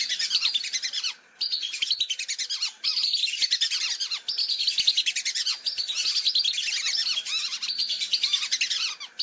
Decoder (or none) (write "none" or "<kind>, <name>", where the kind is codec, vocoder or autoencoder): none